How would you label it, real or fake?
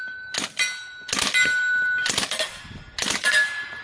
real